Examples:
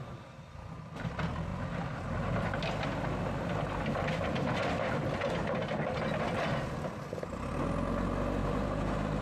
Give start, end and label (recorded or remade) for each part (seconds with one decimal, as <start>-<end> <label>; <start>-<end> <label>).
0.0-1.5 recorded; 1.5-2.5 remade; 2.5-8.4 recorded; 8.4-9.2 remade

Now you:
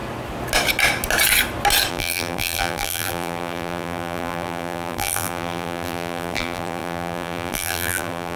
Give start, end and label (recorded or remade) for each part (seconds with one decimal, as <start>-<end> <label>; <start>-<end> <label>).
0.0-1.9 recorded; 1.9-8.4 remade

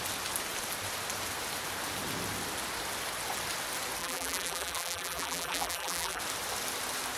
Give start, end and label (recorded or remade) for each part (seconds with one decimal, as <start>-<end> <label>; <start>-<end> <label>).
0.0-4.0 recorded; 4.0-6.2 remade; 6.2-7.2 recorded

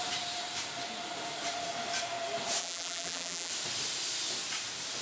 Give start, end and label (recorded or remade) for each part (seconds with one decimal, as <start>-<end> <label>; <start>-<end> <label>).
0.0-2.6 recorded; 2.6-3.5 remade; 3.5-5.0 recorded

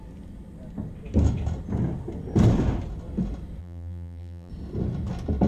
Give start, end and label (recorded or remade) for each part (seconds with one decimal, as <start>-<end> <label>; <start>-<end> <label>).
0.0-3.6 recorded; 3.6-4.5 remade; 4.5-5.5 recorded

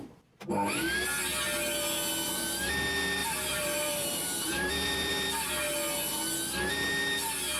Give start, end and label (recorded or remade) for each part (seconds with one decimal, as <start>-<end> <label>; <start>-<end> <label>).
0.0-3.2 recorded; 3.2-5.5 remade; 5.5-7.6 recorded